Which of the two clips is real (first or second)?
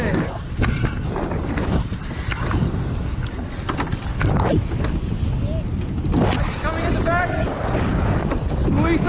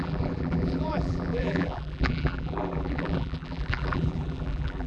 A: first